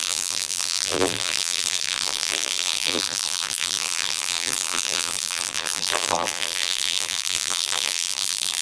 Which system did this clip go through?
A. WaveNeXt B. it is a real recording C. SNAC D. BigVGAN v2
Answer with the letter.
D